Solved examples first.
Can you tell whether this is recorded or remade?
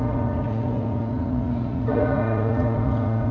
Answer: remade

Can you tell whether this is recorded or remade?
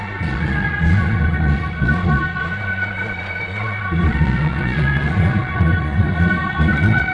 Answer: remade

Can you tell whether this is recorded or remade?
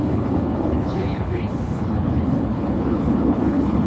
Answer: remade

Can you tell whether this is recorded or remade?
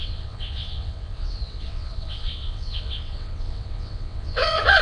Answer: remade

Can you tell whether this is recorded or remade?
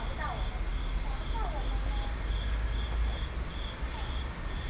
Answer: recorded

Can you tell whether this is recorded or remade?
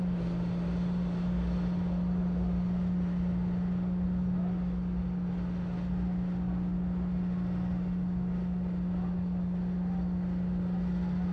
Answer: recorded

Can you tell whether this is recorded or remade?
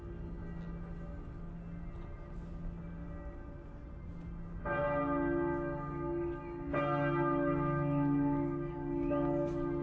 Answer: recorded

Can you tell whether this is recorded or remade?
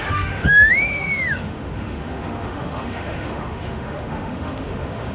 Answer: remade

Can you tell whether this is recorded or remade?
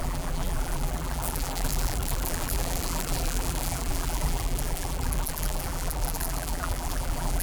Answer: remade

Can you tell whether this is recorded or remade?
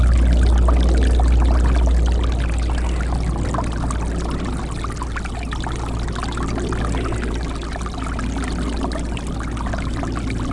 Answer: recorded